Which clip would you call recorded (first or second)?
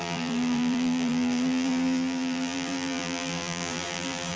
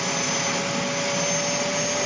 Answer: second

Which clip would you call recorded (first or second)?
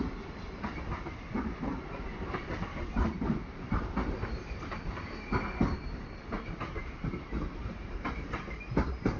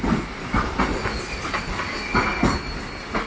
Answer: second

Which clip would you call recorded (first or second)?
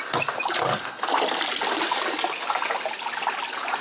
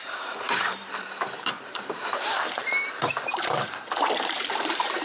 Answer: first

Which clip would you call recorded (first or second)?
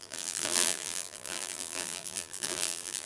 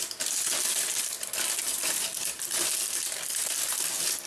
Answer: second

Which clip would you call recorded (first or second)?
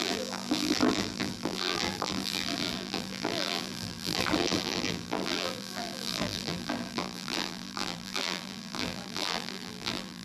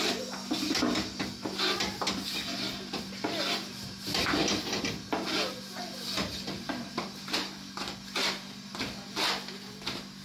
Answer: second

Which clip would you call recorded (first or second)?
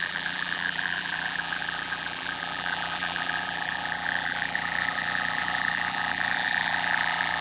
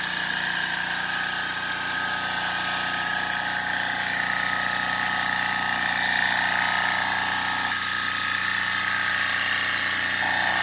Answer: second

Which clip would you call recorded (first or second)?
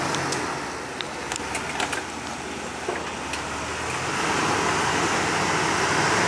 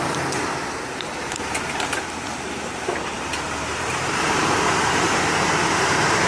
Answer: first